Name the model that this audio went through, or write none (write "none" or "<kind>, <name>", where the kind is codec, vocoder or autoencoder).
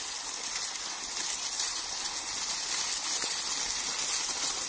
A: none